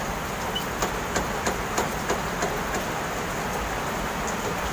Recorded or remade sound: recorded